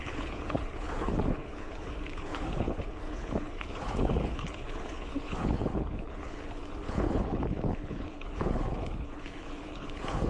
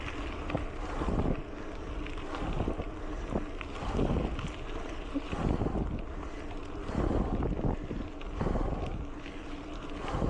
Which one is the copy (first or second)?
first